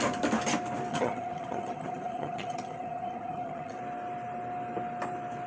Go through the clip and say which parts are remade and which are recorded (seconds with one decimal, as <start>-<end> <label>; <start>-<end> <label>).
0.0-0.9 recorded; 0.9-3.8 remade; 3.8-5.5 recorded